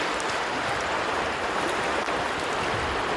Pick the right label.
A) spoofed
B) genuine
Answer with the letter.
B